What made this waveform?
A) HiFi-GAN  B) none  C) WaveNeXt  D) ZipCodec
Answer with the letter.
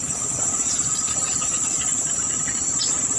B